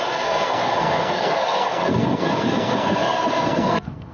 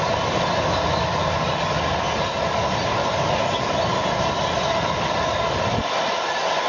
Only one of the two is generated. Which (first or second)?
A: first